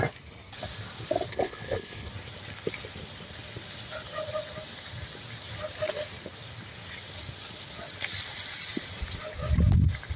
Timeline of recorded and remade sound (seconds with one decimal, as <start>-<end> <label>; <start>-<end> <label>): 0.0-1.3 recorded; 1.3-2.1 remade; 2.1-10.2 recorded